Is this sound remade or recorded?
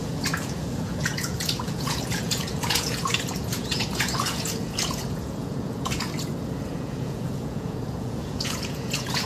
remade